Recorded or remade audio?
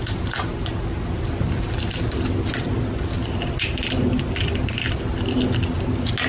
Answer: recorded